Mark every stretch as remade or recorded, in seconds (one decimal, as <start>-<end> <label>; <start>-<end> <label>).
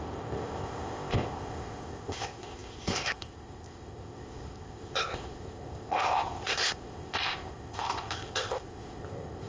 0.0-9.5 remade